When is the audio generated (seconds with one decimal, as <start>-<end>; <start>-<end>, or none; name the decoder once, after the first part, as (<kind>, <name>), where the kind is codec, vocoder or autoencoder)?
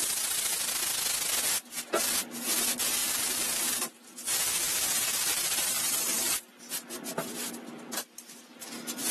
3.0-6.6 (vocoder, BigVGAN v2)